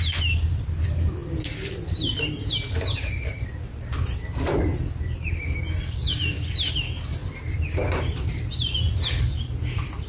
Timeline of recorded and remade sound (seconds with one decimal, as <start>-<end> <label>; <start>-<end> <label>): 0.0-10.1 recorded